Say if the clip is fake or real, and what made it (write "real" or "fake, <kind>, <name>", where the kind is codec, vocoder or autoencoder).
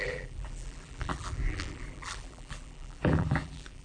fake, vocoder, BigVGAN v2